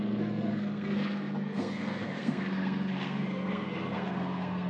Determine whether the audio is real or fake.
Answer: fake